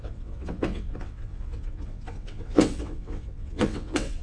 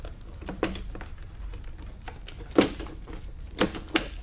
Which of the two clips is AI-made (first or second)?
first